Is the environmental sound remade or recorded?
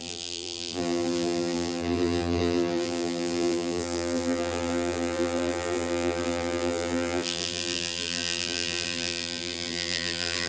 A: remade